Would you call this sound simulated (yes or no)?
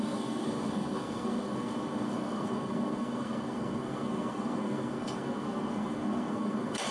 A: yes